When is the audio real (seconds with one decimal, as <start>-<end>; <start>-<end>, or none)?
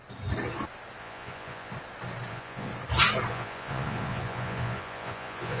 0.0-1.0; 1.7-2.3; 2.7-3.3